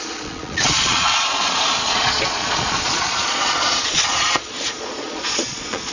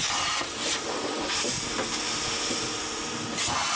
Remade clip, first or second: first